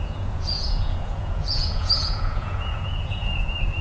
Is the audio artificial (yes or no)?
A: yes